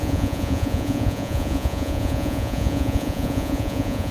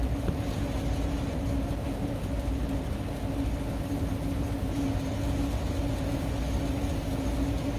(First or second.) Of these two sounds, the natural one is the second